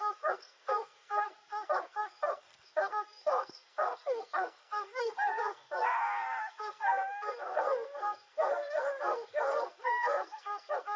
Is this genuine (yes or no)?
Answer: no